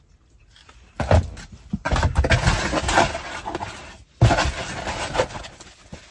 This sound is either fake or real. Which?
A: real